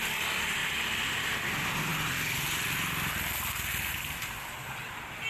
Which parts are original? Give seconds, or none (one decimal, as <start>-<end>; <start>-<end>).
0.0-5.3